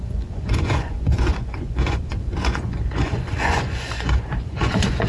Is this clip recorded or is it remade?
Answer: remade